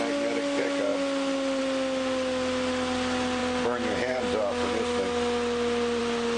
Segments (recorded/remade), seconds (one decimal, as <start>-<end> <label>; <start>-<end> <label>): 0.0-6.4 recorded